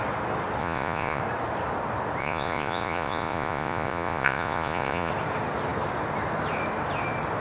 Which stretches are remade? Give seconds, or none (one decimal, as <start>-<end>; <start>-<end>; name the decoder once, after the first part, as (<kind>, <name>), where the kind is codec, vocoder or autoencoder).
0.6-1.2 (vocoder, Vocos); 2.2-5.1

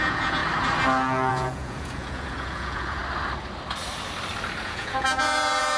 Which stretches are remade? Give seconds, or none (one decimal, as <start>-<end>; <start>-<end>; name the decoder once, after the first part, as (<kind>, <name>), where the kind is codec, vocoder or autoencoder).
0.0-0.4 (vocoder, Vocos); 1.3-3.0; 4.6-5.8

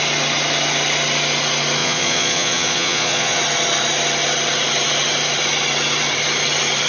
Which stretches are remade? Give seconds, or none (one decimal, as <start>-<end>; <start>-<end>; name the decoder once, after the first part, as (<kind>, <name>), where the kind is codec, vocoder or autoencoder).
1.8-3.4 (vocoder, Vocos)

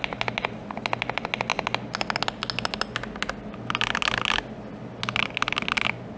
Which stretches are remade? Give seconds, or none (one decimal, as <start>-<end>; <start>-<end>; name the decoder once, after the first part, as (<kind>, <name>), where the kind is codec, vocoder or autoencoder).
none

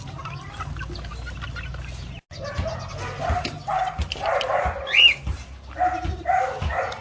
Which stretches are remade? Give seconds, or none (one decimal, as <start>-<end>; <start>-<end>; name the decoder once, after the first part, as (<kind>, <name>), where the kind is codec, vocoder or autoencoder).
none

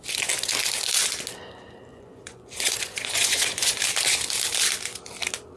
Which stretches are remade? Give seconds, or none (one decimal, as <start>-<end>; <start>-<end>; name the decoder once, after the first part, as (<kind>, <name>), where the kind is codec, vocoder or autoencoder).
1.9-3.8 (vocoder, Vocos)